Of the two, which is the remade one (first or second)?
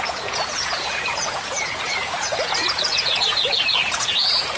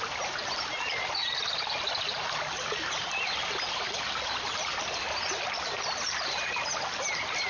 first